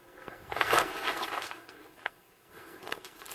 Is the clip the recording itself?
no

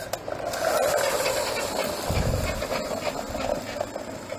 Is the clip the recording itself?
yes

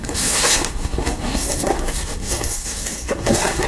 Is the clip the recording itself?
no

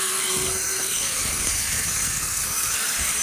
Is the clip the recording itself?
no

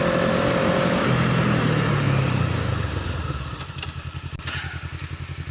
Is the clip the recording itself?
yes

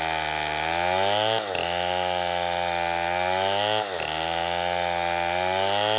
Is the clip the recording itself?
yes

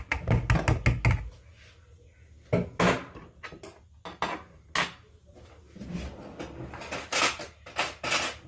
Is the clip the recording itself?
yes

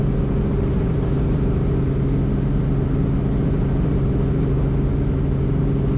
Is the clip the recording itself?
yes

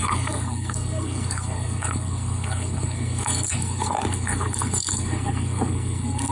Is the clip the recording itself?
no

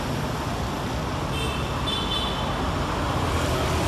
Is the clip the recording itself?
yes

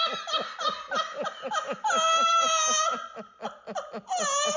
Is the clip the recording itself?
yes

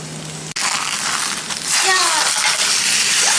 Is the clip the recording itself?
yes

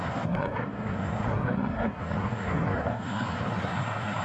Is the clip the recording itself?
no